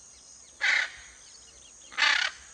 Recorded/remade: recorded